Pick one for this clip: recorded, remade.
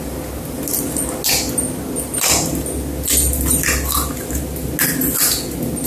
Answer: recorded